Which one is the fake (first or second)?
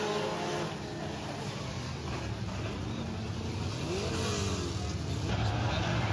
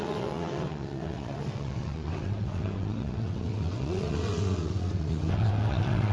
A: second